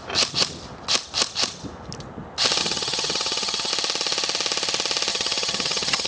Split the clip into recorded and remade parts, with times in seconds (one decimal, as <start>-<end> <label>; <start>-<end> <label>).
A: 0.0-2.6 recorded; 2.6-3.7 remade; 3.7-5.1 recorded; 5.1-6.1 remade